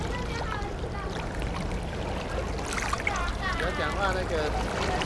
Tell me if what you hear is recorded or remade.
recorded